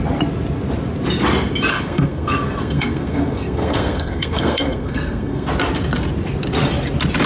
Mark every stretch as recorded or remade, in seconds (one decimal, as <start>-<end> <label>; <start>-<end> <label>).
0.0-1.7 recorded; 1.7-5.5 remade; 5.5-7.3 recorded